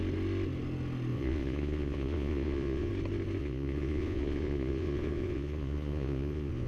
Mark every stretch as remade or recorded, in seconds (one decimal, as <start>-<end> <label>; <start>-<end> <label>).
0.0-1.1 recorded; 1.1-2.9 remade; 2.9-3.4 recorded; 3.4-6.7 remade